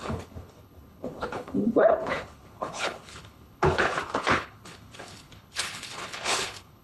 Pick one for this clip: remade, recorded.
remade